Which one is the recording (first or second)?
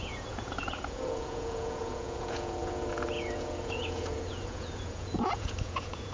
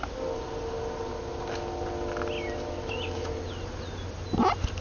second